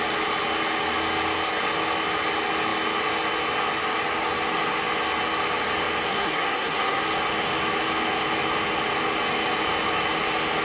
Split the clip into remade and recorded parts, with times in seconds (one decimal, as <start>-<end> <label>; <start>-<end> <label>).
0.0-6.1 recorded; 6.1-7.0 remade; 7.0-10.6 recorded